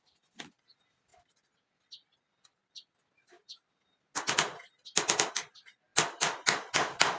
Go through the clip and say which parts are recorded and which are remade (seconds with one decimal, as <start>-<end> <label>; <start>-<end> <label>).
0.0-7.2 recorded